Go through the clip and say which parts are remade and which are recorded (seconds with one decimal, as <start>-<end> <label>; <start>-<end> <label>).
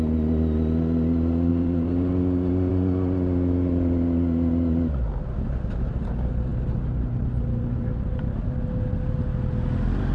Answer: 0.0-1.5 recorded; 1.5-2.1 remade; 2.1-6.5 recorded; 6.5-8.2 remade; 8.2-10.1 recorded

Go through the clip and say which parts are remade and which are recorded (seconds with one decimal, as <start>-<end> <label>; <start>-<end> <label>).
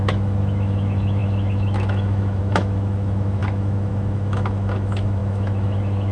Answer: 0.0-6.1 remade